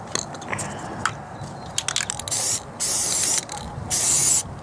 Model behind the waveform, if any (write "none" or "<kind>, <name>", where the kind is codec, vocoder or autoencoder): none